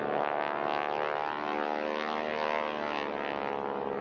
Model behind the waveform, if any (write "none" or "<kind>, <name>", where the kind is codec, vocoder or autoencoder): none